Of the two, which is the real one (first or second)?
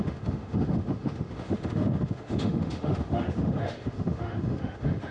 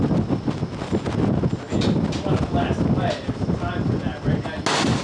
second